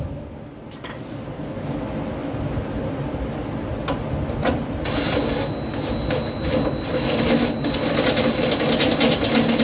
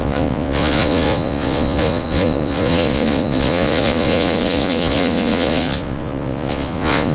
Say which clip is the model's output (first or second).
second